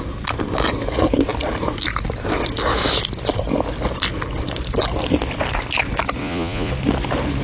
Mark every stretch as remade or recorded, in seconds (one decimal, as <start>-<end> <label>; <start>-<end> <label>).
0.0-6.2 recorded; 6.2-6.7 remade; 6.7-7.4 recorded